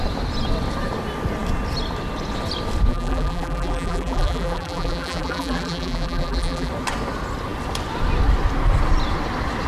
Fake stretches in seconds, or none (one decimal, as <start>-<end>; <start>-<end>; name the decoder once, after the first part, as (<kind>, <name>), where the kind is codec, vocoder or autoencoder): 2.9-6.7 (vocoder, BigVGAN v2)